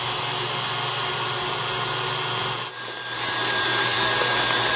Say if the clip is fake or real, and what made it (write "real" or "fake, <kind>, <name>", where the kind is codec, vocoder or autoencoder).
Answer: real